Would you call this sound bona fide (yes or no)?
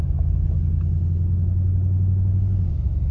yes